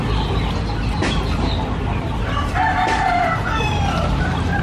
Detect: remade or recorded recorded